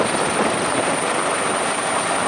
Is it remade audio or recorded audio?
recorded